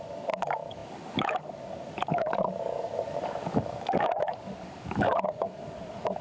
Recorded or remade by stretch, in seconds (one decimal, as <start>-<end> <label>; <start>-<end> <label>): 0.0-6.2 remade